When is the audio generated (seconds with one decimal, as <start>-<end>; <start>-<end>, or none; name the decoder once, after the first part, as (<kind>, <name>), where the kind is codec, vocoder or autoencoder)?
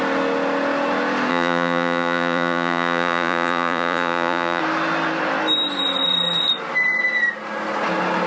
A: 1.3-4.6 (vocoder, Vocos)